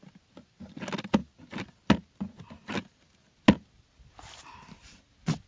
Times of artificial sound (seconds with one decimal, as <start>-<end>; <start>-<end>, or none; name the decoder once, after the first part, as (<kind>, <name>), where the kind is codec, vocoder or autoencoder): none